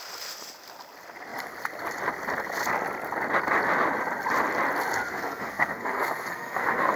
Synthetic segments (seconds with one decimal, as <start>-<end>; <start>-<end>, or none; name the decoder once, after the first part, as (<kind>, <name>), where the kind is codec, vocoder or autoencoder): 5.1-7.0 (codec, SNAC)